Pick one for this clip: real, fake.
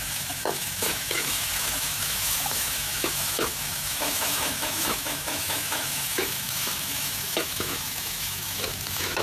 fake